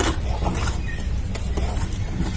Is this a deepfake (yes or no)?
no